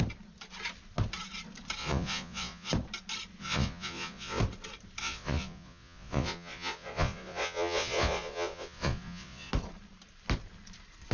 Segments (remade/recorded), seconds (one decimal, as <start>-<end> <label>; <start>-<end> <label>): 0.0-1.8 recorded; 1.8-2.7 remade; 2.7-3.4 recorded; 3.4-4.4 remade; 4.4-5.0 recorded; 5.0-9.5 remade; 9.5-11.1 recorded

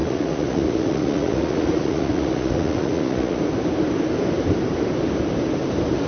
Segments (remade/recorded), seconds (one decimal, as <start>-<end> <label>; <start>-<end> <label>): 0.0-3.4 remade; 3.4-6.1 recorded

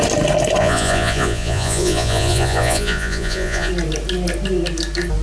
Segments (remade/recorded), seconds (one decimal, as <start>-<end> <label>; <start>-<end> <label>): 0.0-0.6 recorded; 0.6-3.7 remade; 3.7-5.2 recorded